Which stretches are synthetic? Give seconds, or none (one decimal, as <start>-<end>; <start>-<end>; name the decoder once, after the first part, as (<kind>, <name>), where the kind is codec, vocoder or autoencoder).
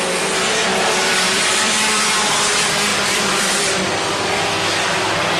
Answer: 0.7-2.0 (vocoder, BigVGAN v2); 2.9-5.4